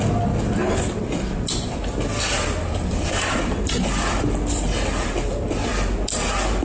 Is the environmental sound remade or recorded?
recorded